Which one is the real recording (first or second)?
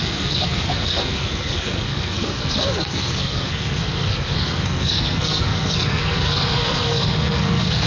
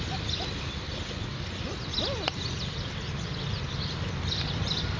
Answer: second